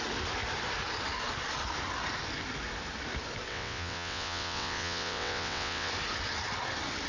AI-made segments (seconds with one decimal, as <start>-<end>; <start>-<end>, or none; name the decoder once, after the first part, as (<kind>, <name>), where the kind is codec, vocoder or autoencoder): 3.5-5.9 (vocoder, WaveNeXt)